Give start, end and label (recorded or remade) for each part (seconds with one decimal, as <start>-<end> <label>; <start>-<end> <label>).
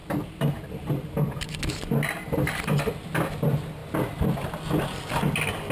0.0-5.7 recorded